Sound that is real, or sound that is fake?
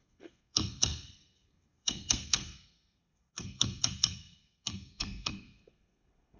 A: fake